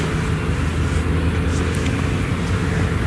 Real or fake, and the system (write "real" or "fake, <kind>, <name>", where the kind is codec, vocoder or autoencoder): real